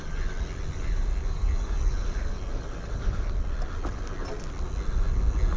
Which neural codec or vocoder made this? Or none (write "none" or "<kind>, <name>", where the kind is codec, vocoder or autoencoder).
none